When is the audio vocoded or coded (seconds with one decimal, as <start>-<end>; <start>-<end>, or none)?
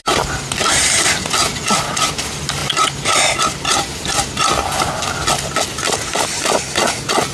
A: none